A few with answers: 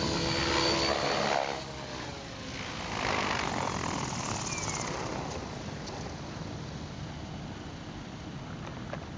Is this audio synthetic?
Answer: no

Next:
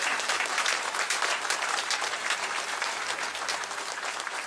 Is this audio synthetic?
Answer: yes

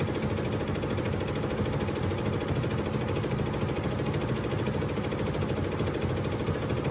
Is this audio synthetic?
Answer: no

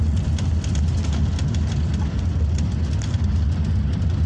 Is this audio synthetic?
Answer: no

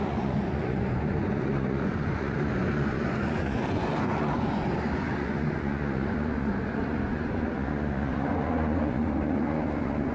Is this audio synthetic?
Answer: yes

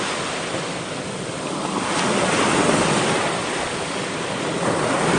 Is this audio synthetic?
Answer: no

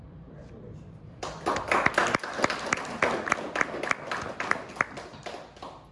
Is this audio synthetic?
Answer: no